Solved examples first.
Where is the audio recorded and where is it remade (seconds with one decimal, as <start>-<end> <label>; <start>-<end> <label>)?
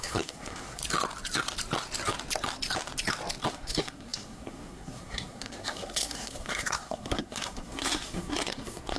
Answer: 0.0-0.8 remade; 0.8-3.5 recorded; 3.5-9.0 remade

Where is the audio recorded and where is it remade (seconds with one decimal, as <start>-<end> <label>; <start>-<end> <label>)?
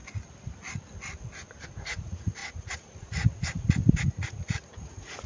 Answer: 0.0-1.7 recorded; 1.7-5.3 remade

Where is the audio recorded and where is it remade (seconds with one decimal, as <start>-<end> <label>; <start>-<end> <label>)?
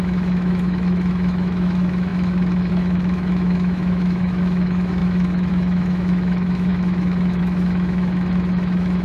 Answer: 0.0-9.0 remade